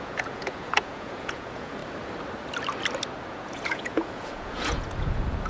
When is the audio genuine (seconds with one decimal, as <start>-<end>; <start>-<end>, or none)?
1.8-3.3